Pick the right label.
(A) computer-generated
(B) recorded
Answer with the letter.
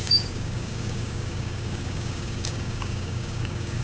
A